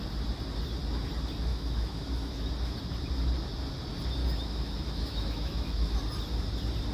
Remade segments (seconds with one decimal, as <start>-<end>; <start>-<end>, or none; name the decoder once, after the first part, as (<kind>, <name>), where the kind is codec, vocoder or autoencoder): 1.5-2.5 (autoencoder, DAC-VAE); 4.2-6.0